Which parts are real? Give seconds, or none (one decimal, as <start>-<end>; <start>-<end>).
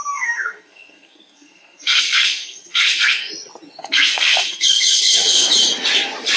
3.3-3.8; 5.5-6.4